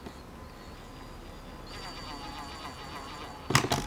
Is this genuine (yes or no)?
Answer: yes